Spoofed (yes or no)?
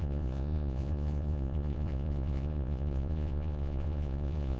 yes